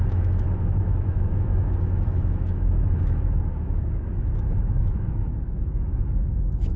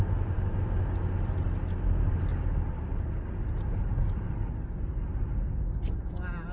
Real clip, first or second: second